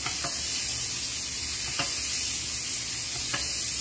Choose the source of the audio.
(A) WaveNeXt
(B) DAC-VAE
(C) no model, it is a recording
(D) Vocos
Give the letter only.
C